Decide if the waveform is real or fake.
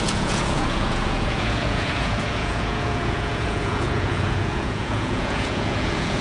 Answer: fake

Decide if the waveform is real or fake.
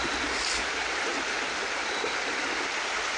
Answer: real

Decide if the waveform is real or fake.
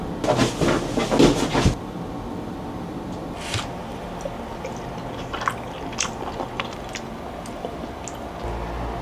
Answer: real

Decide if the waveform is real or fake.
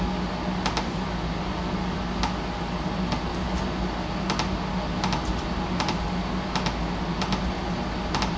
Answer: real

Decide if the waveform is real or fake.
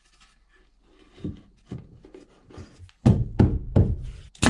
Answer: real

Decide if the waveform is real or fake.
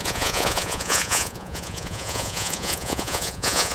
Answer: fake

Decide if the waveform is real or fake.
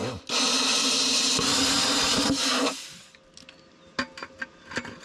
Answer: real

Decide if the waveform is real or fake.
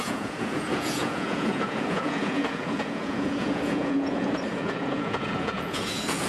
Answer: fake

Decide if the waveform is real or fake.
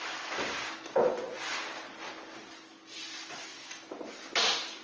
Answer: real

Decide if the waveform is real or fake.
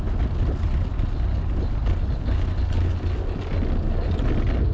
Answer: real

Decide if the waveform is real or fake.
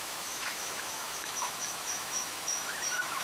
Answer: fake